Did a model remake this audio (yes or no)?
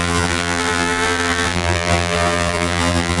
yes